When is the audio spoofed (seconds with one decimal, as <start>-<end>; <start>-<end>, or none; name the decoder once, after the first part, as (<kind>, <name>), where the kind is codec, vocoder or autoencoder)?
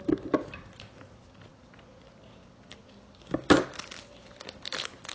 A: none